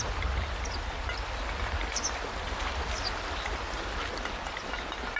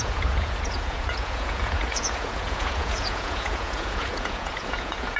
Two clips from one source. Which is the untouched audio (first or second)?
first